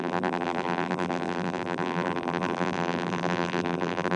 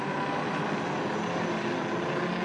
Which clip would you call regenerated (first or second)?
first